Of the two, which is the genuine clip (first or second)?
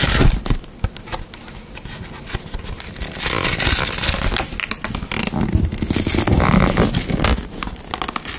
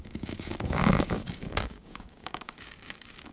first